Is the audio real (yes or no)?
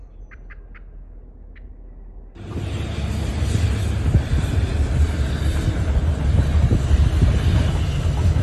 yes